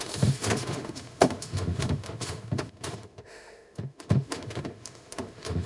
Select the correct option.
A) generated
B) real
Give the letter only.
A